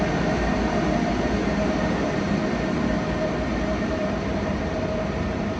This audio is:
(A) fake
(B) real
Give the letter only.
A